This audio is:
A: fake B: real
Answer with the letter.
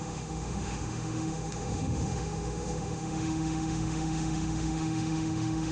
A